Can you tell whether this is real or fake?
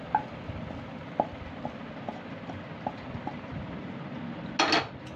real